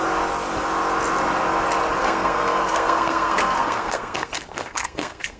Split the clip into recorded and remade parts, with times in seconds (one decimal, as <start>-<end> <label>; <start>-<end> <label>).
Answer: 0.0-2.0 recorded; 2.0-5.4 remade